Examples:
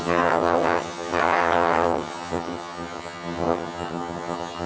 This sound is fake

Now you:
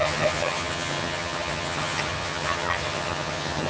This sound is fake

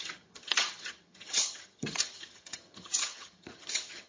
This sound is fake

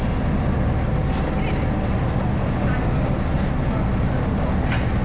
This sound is real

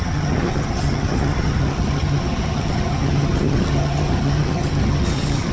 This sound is fake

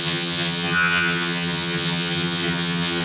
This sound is fake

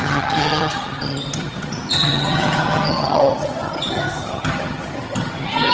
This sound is fake